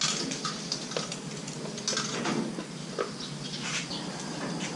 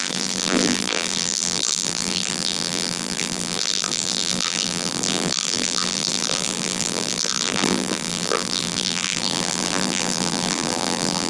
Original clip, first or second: first